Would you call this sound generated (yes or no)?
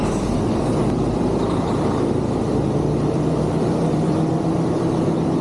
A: yes